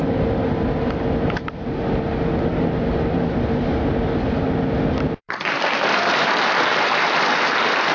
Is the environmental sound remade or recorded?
remade